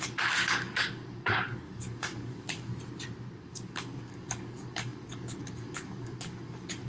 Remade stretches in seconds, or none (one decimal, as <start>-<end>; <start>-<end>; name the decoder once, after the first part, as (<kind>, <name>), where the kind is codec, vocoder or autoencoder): 0.0-2.7 (codec, DAC); 3.4-6.9

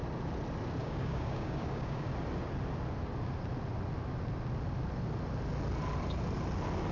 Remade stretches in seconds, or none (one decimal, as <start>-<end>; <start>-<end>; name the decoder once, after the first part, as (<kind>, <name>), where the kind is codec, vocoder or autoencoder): 0.8-2.1 (codec, DAC)